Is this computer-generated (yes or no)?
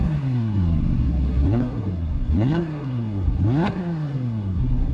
yes